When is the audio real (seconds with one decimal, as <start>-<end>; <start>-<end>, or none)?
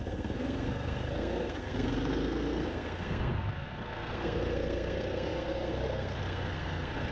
none